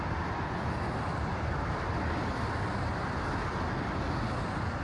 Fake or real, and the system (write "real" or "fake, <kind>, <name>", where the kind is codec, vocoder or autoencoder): real